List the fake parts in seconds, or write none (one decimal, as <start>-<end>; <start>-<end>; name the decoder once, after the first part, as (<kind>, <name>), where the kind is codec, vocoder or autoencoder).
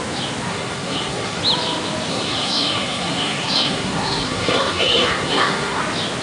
0.5-1.4 (codec, SNAC); 2.1-5.8